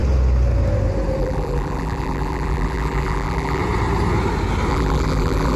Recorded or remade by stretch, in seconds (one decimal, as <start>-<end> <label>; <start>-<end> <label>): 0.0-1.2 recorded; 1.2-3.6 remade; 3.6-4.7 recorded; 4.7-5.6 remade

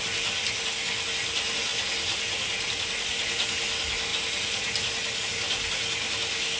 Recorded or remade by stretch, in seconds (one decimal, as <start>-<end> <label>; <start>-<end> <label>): 0.0-6.6 recorded

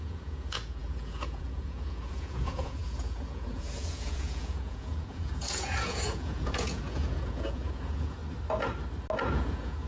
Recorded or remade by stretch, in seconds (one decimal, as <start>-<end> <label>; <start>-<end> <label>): 0.0-8.2 remade; 8.2-9.3 recorded; 9.3-9.9 remade